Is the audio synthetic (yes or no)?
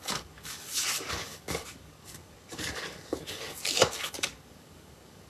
yes